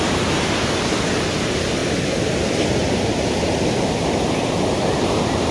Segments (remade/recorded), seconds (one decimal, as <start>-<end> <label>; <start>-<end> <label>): 0.0-5.5 recorded